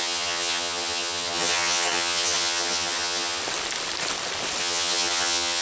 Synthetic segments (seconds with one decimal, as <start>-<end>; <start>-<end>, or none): 0.0-3.4; 4.6-5.6